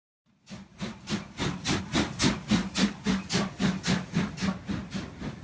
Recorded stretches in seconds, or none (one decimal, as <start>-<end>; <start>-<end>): 0.0-5.4